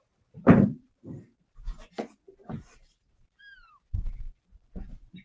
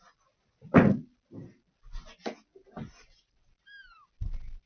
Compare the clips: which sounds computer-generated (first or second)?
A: first